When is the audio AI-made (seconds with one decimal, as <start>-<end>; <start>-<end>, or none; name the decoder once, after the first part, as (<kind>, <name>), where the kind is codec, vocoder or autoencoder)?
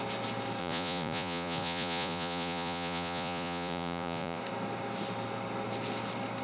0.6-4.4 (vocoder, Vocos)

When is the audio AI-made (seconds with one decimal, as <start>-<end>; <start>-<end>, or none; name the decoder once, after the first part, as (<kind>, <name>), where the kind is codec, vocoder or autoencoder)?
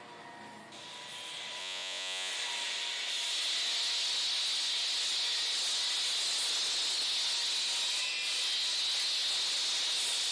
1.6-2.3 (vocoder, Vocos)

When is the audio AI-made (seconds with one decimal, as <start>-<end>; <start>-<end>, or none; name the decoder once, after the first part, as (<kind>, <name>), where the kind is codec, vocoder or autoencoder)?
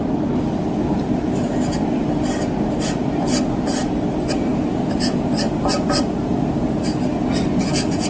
none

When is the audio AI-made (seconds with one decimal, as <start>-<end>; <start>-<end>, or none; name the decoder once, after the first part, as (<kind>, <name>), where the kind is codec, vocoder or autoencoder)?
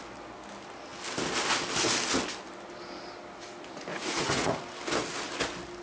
3.9-4.5 (vocoder, Vocos)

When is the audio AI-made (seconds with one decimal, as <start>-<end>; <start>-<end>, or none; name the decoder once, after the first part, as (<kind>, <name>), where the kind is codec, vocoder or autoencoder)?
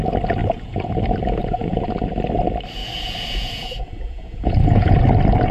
0.4-0.9 (vocoder, Vocos); 1.4-1.9; 2.8-5.0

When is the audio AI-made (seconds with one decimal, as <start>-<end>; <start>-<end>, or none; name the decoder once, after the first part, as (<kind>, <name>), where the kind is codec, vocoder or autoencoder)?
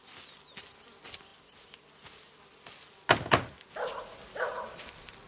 none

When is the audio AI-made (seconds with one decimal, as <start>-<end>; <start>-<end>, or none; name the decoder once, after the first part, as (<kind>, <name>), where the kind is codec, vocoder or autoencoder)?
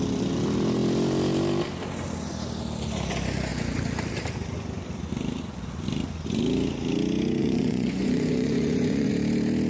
7.4-9.1 (vocoder, Vocos)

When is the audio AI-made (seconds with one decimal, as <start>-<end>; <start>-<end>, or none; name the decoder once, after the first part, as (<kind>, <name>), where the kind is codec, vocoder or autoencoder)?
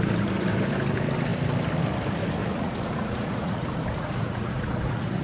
2.4-5.2 (vocoder, Vocos)